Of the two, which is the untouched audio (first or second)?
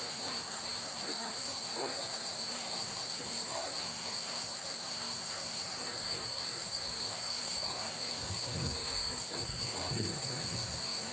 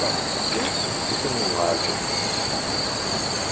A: second